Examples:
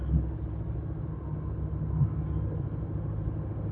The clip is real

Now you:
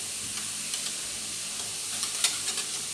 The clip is real